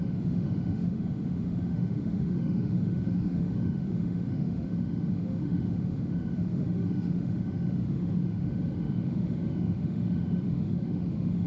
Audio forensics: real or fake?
fake